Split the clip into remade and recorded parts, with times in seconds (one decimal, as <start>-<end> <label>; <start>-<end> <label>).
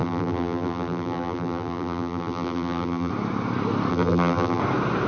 0.0-3.1 remade; 3.1-3.9 recorded; 3.9-4.6 remade; 4.6-5.1 recorded